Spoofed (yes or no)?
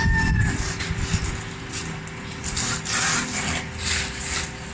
no